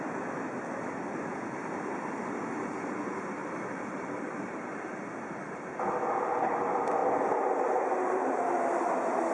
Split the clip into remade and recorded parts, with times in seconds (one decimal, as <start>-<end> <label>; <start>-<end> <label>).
0.0-3.4 recorded; 3.4-5.2 remade; 5.2-9.3 recorded